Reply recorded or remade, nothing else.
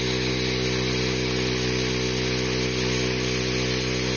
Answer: recorded